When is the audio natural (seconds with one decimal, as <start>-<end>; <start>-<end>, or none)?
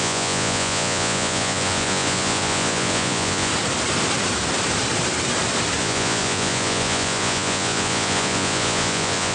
3.5-5.8